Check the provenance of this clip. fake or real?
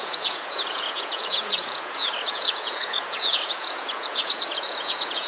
fake